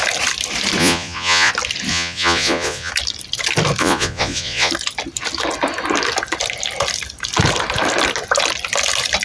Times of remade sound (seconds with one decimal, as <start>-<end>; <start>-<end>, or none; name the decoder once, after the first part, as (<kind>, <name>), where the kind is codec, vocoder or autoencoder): 0.8-1.5 (vocoder, Vocos); 1.9-2.9; 3.8-4.7